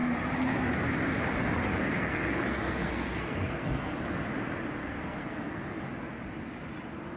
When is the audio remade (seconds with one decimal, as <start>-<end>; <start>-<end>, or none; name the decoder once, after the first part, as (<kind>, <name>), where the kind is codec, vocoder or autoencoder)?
1.6-3.9 (codec, SNAC); 4.8-5.8